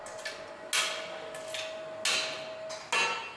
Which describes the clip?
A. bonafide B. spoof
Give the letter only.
A